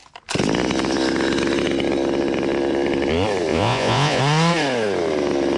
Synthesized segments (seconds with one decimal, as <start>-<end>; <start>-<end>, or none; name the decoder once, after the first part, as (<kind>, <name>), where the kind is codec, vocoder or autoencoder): 3.5-4.2 (vocoder, Vocos)